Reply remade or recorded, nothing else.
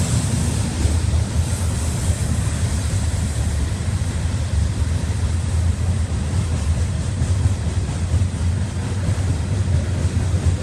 recorded